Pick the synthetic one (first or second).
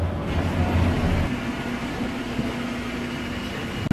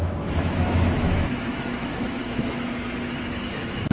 second